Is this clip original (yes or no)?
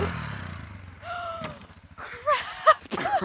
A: yes